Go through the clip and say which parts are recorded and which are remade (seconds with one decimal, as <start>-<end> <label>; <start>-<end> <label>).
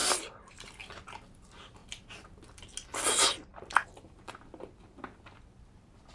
0.0-0.7 remade; 0.7-3.5 recorded; 3.5-4.6 remade; 4.6-6.1 recorded